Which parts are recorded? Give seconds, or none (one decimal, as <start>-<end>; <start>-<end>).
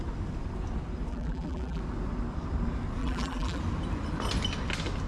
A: 0.0-1.1; 1.8-3.0; 3.6-5.1